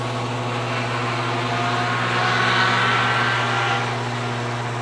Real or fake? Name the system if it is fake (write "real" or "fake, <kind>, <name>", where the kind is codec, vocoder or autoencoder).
real